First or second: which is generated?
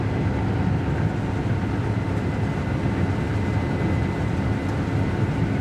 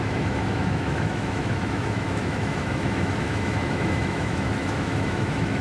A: second